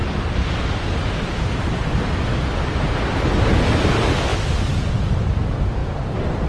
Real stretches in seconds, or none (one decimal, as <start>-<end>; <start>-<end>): 0.0-5.8